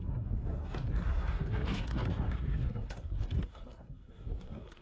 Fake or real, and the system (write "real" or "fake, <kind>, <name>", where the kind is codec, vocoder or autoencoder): fake, codec, SNAC